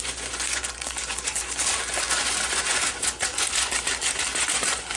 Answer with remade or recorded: remade